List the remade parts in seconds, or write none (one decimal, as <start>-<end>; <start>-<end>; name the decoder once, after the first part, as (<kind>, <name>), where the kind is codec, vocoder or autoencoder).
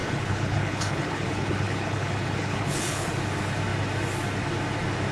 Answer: 0.0-3.1 (codec, HILCodec)